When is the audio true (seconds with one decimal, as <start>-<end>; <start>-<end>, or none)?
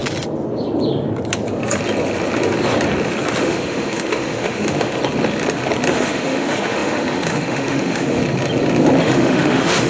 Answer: 0.0-3.4; 5.0-5.9; 8.2-9.0